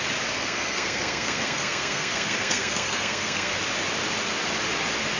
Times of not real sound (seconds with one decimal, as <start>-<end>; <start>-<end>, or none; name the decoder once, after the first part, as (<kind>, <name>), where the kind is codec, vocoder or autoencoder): 0.4-3.5 (codec, SNAC)